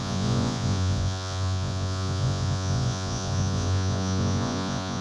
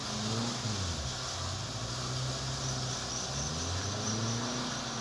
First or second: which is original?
second